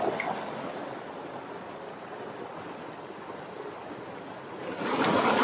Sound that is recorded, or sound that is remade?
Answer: recorded